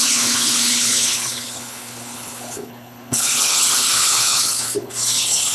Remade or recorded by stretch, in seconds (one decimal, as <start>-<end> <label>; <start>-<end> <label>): 0.0-5.5 remade